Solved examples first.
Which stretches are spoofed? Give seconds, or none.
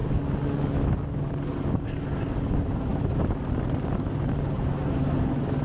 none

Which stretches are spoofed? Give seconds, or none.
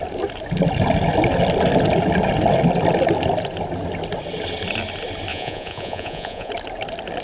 5.3-6.5 (vocoder, Vocos)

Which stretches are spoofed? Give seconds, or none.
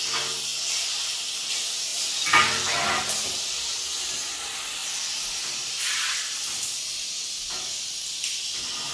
none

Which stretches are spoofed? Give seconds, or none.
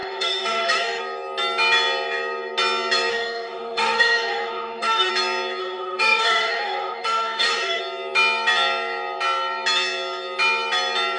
0.0-1.0 (autoencoder, DAC-VAE); 3.1-5.1; 5.6-7.8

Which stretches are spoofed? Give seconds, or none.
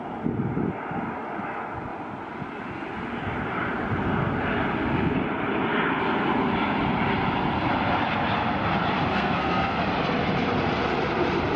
9.1-9.7 (codec, SNAC)